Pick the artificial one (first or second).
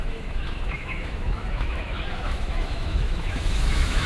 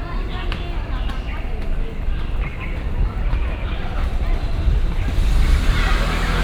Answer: first